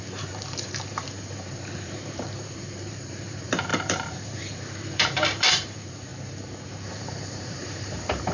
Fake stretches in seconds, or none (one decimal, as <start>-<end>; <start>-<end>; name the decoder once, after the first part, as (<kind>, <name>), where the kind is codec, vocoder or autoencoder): 0.0-6.1 (vocoder, BigVGAN v2); 6.9-8.3